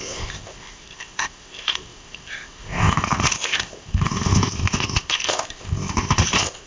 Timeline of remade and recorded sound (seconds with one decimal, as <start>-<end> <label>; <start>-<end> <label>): 0.0-6.7 remade